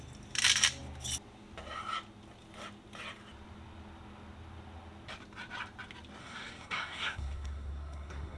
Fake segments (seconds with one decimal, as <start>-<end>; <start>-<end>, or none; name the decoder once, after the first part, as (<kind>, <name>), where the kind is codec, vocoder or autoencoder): 6.2-8.4 (codec, SNAC)